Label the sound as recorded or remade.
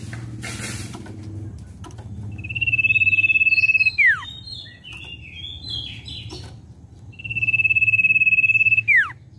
recorded